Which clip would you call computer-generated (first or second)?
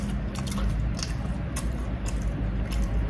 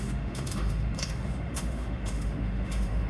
second